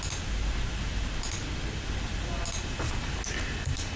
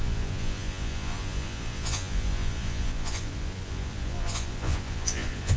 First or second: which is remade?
second